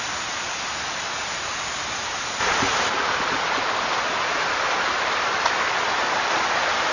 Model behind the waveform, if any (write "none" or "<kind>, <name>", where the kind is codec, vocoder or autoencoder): none